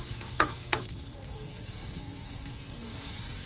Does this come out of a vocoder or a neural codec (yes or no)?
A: yes